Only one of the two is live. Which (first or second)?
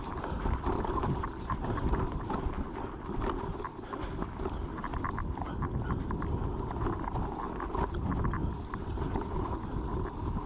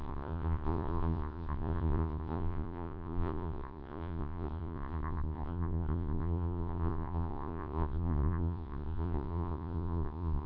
first